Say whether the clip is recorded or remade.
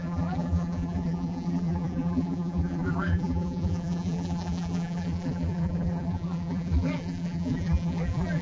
remade